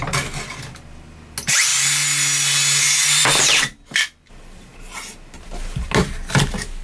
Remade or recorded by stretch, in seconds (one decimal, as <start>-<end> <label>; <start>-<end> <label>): 0.0-6.8 recorded